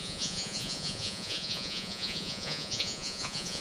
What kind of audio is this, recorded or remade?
remade